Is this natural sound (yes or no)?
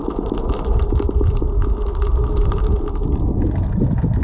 yes